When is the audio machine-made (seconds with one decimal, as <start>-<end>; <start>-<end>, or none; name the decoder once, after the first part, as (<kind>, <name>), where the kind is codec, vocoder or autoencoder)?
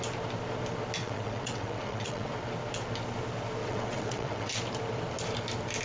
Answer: 1.0-2.3 (vocoder, WaveNeXt); 3.6-4.5